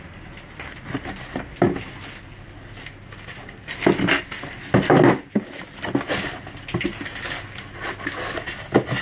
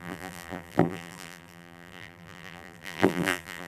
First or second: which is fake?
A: second